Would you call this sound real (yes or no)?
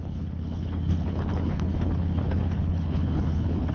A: no